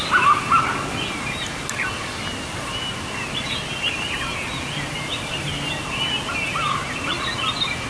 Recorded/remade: recorded